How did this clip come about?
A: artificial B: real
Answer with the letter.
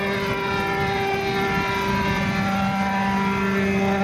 B